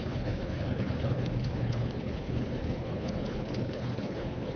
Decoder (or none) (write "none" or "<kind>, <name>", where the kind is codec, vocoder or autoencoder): codec, HILCodec